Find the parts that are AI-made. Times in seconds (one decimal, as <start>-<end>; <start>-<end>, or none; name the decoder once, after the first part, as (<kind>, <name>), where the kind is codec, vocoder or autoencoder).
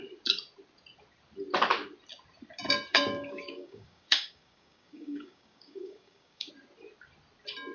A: 2.9-6.5 (codec, DAC)